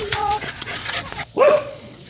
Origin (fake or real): fake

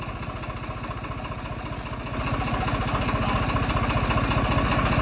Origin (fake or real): real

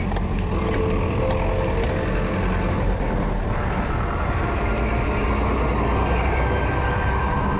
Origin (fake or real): real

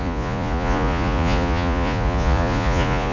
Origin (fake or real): fake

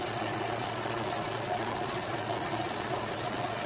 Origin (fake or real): fake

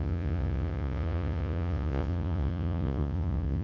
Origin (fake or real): fake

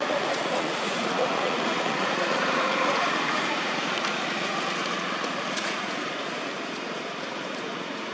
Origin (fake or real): fake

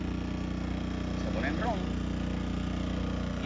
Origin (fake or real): real